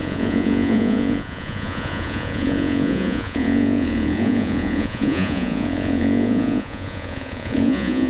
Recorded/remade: remade